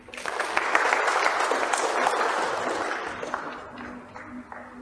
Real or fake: real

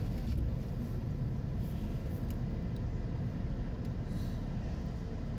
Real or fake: real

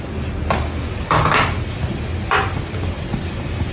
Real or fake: real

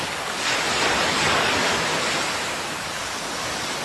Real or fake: real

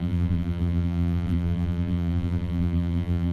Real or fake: fake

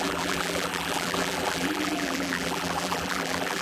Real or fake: fake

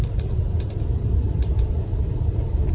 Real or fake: fake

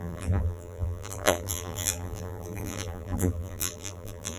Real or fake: fake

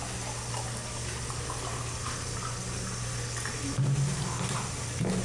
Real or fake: real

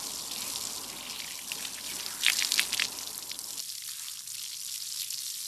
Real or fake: real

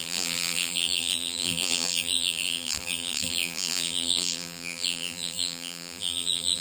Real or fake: fake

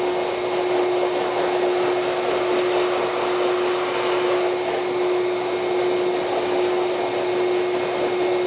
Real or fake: real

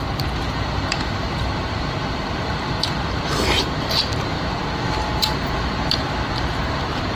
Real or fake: fake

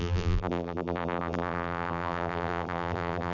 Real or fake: fake